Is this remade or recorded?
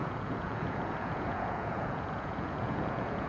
remade